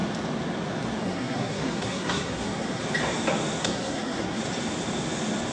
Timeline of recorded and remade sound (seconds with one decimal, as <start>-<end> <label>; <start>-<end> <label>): 0.0-1.0 recorded; 1.0-2.8 remade; 2.8-3.6 recorded; 3.6-4.4 remade; 4.4-5.5 recorded